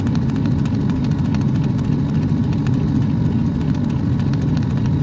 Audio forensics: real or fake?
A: real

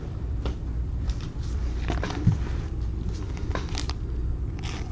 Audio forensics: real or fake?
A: fake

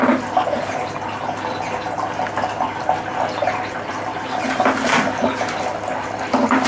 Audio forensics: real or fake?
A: real